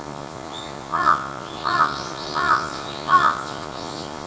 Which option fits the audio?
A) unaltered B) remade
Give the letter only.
B